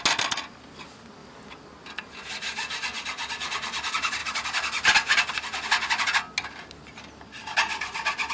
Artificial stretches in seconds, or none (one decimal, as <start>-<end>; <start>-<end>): none